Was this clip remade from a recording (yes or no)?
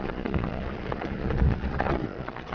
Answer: yes